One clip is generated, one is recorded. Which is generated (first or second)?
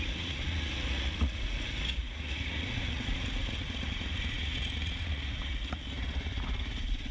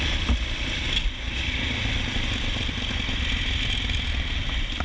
first